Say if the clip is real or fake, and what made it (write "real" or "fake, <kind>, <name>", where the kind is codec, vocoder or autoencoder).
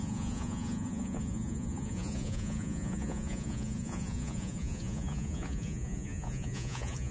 fake, vocoder, Vocos